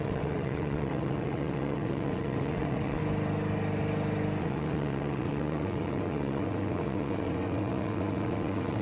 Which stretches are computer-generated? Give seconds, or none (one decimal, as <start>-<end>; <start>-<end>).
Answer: 0.0-3.0; 4.4-8.8